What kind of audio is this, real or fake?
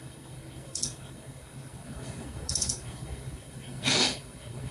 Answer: fake